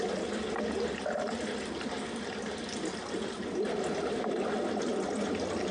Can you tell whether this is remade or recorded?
recorded